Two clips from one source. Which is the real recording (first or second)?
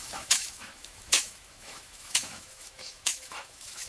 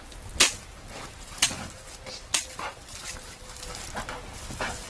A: second